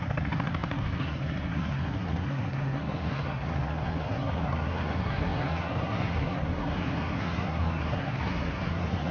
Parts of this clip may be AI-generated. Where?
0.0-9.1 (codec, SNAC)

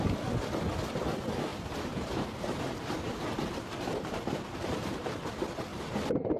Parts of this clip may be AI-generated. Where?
1.5-3.3 (vocoder, BigVGAN v2); 3.9-5.2; 5.7-6.4

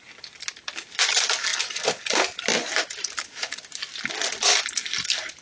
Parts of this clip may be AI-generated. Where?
none

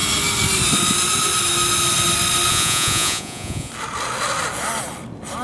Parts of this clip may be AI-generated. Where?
2.5-3.7 (vocoder, Vocos)

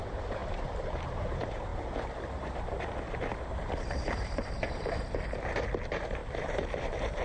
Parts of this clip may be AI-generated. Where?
0.0-7.2 (vocoder, BigVGAN v2)

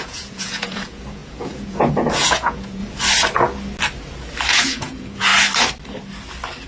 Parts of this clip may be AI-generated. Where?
0.0-2.8 (vocoder, Vocos); 4.5-5.3

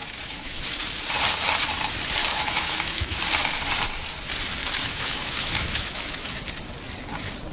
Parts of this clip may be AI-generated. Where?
0.0-0.5 (autoencoder, DAC-VAE); 2.2-3.2; 4.6-6.3